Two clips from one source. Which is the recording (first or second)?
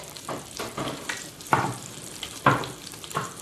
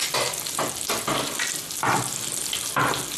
second